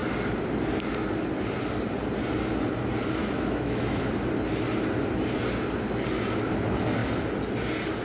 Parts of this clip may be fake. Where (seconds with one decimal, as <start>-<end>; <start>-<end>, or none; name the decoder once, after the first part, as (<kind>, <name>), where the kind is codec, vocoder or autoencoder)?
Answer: 3.2-4.0 (autoencoder, DAC-VAE)